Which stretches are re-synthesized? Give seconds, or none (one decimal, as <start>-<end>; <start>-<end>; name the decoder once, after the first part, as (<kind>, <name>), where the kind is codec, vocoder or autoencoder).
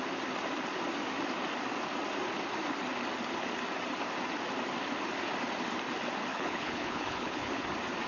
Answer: 6.3-7.6 (codec, HILCodec)